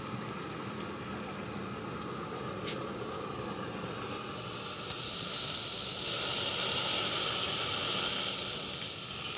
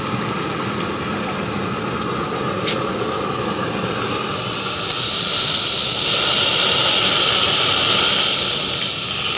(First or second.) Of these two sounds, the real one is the first